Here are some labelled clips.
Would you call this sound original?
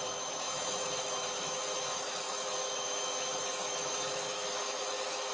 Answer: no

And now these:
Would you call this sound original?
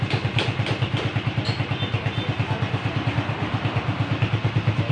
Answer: yes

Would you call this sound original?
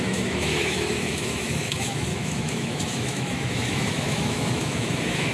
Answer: no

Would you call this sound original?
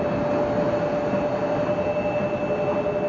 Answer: yes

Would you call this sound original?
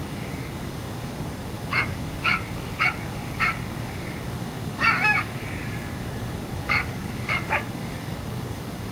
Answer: no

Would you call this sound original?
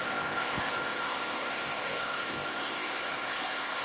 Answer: no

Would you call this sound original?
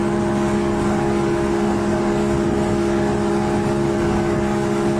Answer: no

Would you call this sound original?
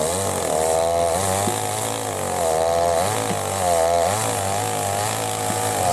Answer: yes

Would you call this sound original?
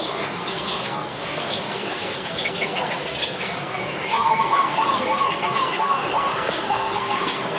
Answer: no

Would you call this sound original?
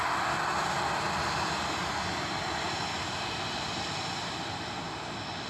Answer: yes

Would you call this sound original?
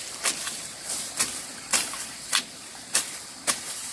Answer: no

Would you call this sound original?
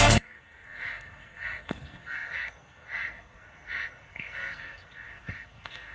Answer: no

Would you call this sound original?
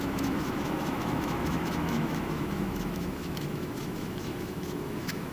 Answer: no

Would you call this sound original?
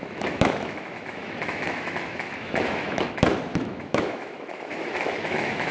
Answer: no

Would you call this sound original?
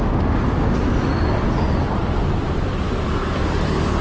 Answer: yes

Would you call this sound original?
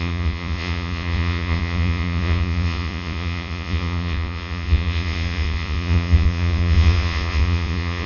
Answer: no